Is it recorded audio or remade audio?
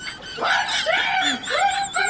recorded